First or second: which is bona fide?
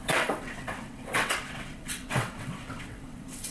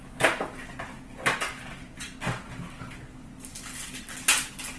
second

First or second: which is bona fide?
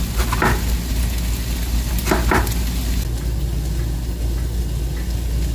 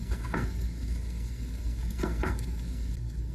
first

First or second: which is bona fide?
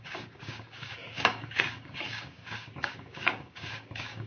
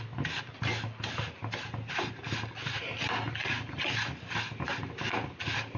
second